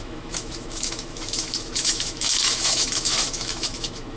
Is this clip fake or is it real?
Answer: fake